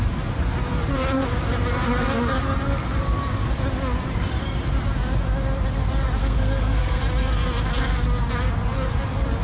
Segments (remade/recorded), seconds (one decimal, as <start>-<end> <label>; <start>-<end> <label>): 0.0-6.2 recorded; 6.2-7.0 remade; 7.0-9.4 recorded